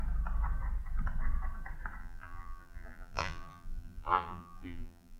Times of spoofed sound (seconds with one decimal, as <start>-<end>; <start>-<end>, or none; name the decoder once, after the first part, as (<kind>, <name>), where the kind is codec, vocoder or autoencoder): 2.0-5.2 (vocoder, BigVGAN v2)